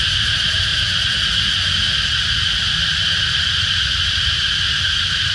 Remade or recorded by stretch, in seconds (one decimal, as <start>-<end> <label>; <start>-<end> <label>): 0.0-5.3 recorded

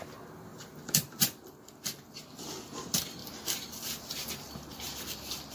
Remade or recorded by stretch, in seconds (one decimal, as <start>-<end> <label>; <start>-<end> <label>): 0.0-5.5 recorded

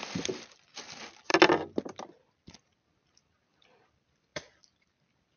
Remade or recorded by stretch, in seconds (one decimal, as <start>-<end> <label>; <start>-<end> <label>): 0.0-1.3 remade; 1.3-2.4 recorded; 2.4-5.4 remade

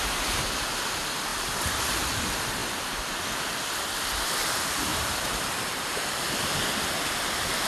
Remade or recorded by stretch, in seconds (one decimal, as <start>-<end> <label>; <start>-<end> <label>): 0.0-4.9 recorded; 4.9-6.5 remade; 6.5-7.7 recorded

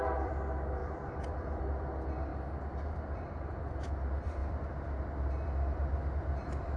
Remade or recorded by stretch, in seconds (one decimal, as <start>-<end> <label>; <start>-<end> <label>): 0.0-2.3 remade; 2.3-2.8 recorded; 2.8-6.8 remade